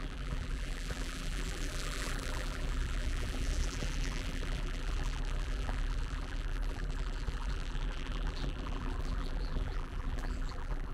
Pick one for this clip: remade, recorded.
remade